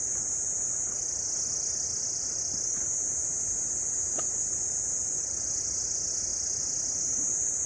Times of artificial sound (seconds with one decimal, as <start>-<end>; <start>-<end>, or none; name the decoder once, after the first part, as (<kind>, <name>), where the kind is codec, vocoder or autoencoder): none